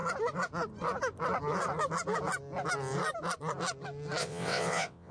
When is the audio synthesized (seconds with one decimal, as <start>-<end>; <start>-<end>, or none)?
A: 4.2-5.1